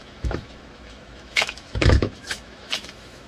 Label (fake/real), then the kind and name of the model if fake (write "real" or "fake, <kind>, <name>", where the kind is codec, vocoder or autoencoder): fake, autoencoder, DAC-VAE